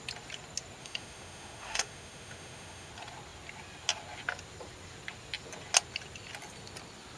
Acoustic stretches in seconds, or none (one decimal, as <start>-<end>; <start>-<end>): 0.0-0.8; 2.9-7.2